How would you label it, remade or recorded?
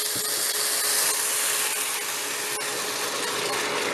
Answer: recorded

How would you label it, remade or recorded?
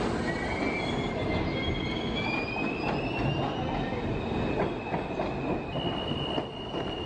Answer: recorded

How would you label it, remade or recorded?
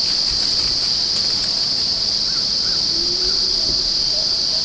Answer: recorded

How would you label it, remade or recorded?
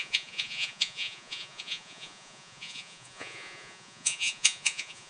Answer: remade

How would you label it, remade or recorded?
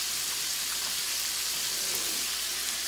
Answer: recorded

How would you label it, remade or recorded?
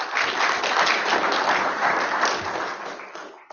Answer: recorded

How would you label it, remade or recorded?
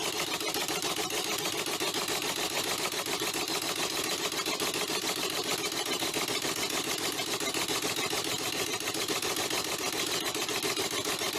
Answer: recorded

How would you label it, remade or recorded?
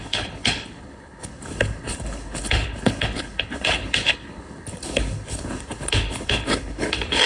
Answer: remade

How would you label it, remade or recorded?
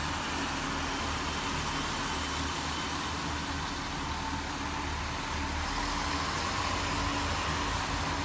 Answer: recorded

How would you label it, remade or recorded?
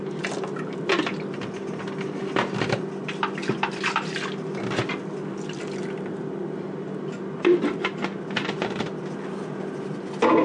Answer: recorded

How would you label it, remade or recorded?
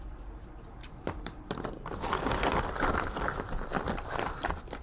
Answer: remade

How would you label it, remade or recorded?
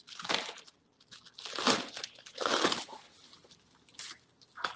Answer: recorded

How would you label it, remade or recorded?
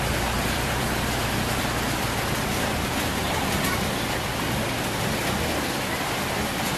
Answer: recorded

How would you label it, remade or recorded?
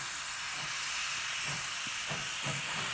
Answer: recorded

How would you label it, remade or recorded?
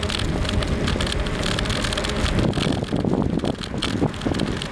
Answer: recorded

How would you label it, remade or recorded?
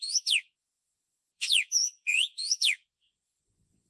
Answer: remade